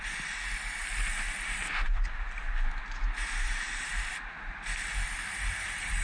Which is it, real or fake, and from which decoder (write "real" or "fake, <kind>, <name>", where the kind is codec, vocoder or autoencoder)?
real